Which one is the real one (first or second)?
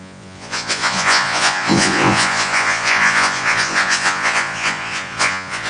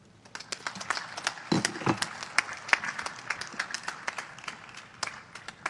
second